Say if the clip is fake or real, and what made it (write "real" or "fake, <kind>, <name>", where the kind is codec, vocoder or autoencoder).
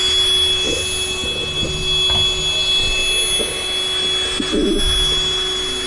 real